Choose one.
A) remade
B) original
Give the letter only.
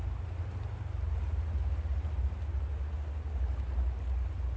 B